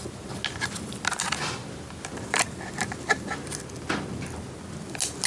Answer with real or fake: real